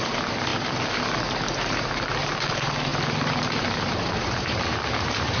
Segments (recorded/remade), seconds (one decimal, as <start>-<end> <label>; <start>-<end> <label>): 0.0-0.5 remade; 0.5-1.5 recorded; 1.5-5.4 remade